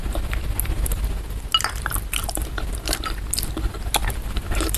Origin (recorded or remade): recorded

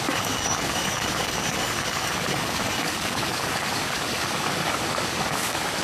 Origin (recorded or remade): remade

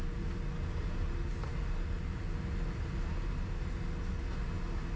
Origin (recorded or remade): recorded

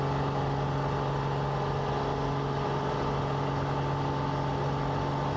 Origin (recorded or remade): recorded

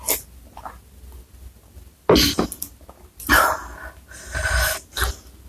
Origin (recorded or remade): recorded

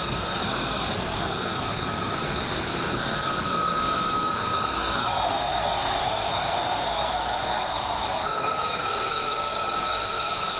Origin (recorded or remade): remade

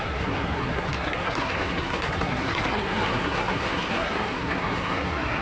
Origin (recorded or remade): remade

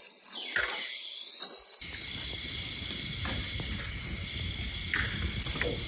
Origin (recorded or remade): recorded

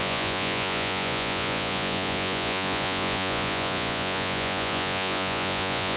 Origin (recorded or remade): remade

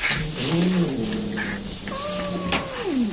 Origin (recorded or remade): recorded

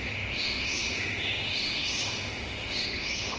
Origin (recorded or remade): remade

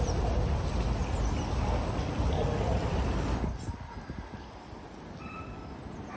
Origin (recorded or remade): recorded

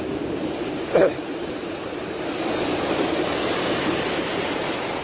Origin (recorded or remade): remade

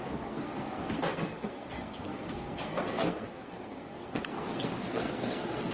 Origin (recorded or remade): remade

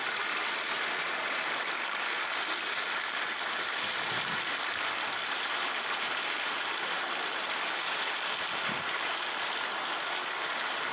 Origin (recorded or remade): recorded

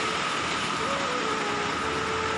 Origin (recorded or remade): recorded